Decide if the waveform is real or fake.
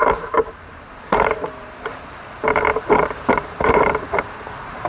fake